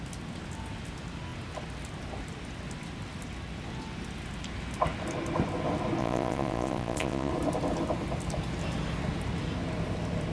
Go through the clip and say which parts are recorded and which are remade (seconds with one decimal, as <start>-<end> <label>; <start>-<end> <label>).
0.0-6.0 recorded; 6.0-7.3 remade; 7.3-10.3 recorded